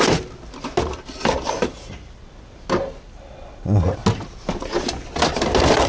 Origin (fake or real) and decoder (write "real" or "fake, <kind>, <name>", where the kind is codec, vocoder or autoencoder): real